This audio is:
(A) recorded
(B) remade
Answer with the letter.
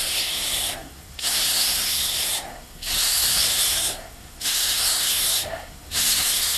B